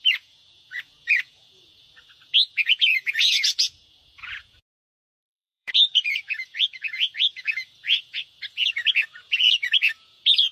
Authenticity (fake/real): fake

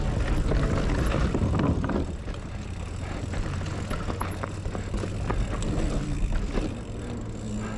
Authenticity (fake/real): real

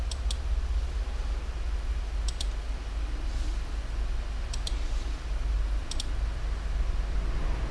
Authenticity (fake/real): real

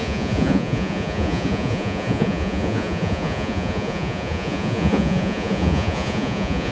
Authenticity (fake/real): fake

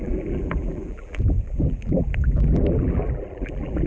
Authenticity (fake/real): fake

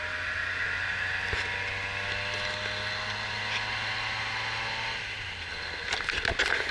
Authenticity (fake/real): real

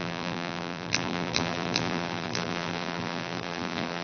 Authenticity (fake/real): fake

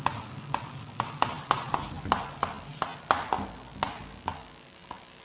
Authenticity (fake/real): real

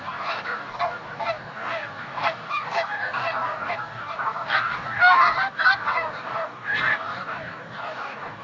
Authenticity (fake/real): fake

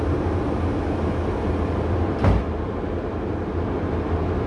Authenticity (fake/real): real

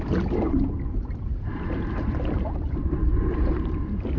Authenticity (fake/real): fake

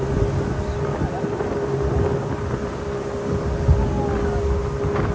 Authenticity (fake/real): real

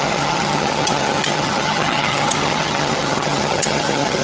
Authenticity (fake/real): fake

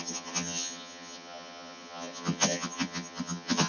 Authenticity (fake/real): fake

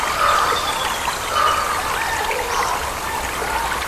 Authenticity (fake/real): real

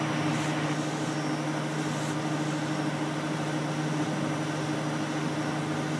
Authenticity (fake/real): real